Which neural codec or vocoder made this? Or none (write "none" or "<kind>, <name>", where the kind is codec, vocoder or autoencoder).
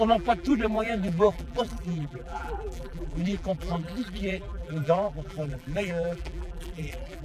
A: vocoder, BigVGAN v2